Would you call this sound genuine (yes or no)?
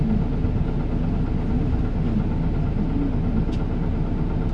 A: yes